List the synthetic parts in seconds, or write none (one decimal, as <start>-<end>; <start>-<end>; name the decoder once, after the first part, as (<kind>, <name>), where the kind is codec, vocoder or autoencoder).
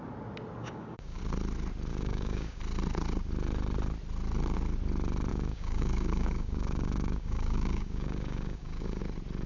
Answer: 0.6-1.2 (codec, DAC); 1.9-2.6; 5.3-9.0